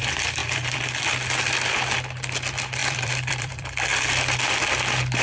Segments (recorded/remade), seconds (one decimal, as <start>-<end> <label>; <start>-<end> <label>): 0.0-0.4 recorded; 0.4-1.0 remade; 1.0-2.8 recorded; 2.8-3.9 remade; 3.9-5.2 recorded

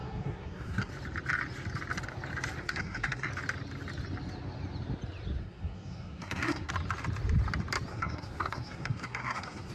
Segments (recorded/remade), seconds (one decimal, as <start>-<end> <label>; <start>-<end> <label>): 0.0-0.9 remade; 0.9-2.6 recorded; 2.6-3.3 remade; 3.3-5.4 recorded; 5.4-6.7 remade; 6.7-7.9 recorded; 7.9-9.7 remade